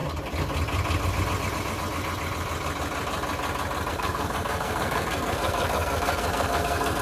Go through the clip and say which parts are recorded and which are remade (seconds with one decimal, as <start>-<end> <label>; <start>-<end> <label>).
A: 0.0-3.9 recorded; 3.9-7.0 remade